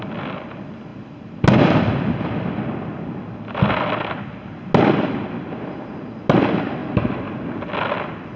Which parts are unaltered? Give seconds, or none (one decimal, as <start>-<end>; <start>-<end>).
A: 0.0-8.4